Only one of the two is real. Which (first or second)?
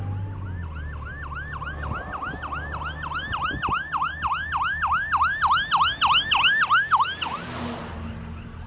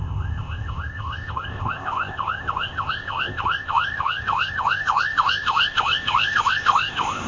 first